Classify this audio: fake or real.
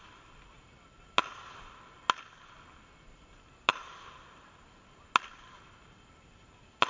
real